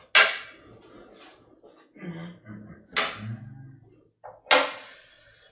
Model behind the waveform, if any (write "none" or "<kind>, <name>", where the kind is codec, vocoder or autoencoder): none